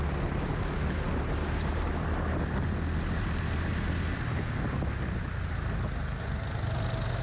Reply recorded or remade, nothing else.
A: recorded